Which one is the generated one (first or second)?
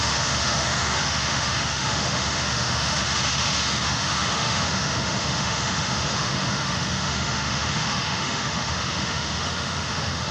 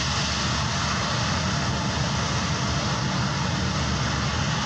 first